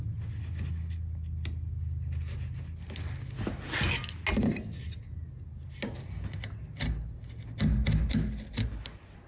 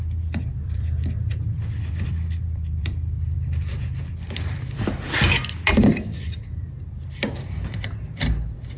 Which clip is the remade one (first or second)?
second